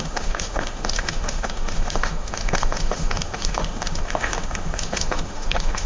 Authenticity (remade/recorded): remade